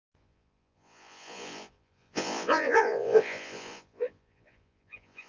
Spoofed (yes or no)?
yes